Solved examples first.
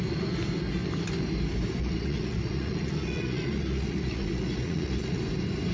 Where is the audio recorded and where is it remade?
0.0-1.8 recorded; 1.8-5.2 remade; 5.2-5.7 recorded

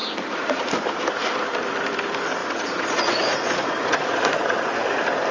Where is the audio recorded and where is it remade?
0.0-0.7 remade; 0.7-2.4 recorded; 2.4-4.8 remade; 4.8-5.3 recorded

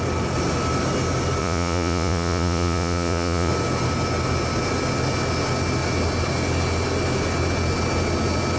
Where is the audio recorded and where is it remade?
0.0-1.4 recorded; 1.4-3.5 remade; 3.5-8.6 recorded

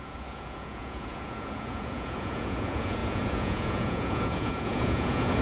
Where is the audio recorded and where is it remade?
0.0-5.4 remade